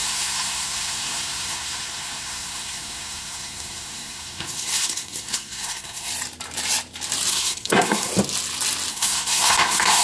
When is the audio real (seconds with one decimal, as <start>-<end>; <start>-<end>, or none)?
6.1-7.3; 8.1-8.9